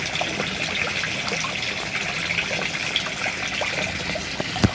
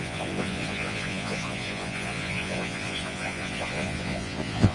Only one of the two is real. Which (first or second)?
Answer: first